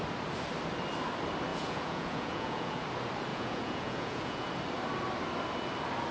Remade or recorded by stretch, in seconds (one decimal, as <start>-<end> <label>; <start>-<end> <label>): 0.0-1.5 recorded; 1.5-2.8 remade; 2.8-3.3 recorded; 3.3-4.5 remade; 4.5-6.1 recorded